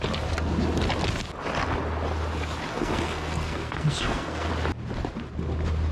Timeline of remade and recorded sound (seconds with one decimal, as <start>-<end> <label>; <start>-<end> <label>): 0.0-2.7 recorded; 2.7-4.5 remade; 4.5-5.9 recorded